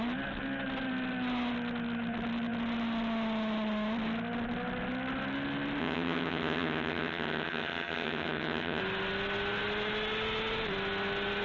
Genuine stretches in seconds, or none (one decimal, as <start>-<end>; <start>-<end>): 0.0-5.8; 8.8-11.4